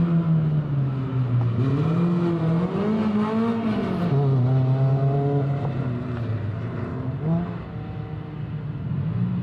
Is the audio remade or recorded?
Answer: recorded